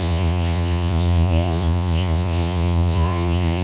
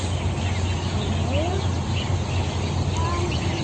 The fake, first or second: first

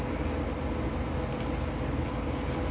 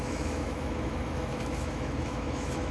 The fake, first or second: second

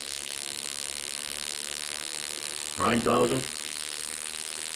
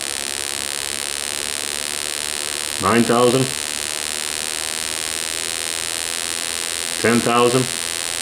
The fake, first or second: first